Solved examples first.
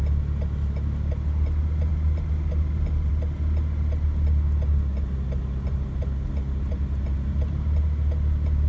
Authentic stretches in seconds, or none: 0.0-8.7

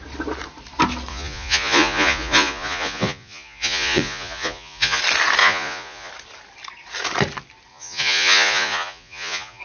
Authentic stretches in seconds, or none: 0.0-1.1; 5.0-5.4; 6.1-7.7

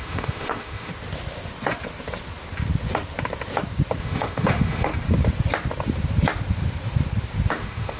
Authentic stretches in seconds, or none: 0.9-4.0; 4.9-7.5

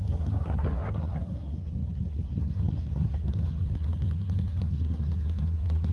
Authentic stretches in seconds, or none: none